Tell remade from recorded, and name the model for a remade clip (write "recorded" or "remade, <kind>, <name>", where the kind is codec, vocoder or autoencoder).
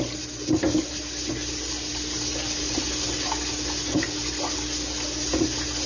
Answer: recorded